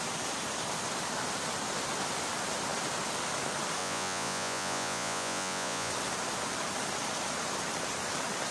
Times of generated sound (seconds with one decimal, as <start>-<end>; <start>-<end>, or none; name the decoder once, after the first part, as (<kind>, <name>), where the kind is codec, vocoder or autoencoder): 3.8-5.9 (vocoder, Vocos)